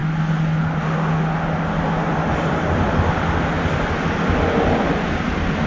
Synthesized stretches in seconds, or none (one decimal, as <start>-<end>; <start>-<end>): none